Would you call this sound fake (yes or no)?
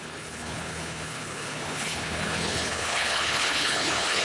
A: yes